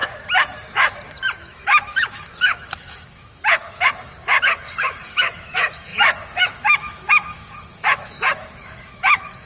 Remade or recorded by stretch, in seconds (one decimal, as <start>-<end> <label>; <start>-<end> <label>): 0.0-1.4 recorded; 1.4-9.5 remade